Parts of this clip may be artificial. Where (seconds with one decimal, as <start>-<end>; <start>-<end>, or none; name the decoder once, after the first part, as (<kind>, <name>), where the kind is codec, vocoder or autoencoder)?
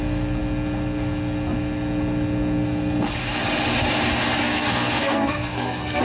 4.4-6.0 (codec, SNAC)